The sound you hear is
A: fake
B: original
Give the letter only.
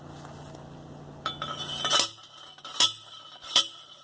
B